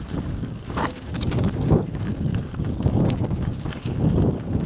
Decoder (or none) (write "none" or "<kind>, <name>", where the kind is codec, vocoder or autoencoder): codec, DAC